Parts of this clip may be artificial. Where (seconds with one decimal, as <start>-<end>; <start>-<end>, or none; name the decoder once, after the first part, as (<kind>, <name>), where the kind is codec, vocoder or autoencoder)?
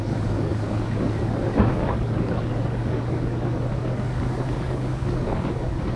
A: 0.0-6.0 (codec, DAC)